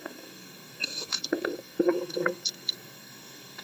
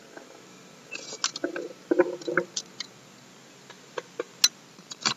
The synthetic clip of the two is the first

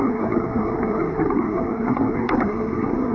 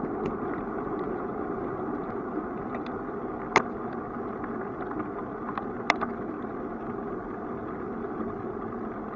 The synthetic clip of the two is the first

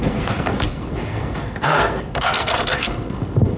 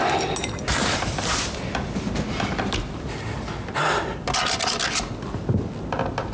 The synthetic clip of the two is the first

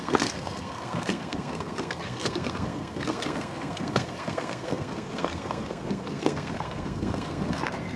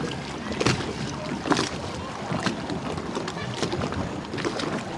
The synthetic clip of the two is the first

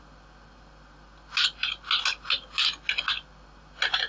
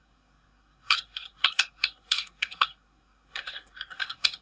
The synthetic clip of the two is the second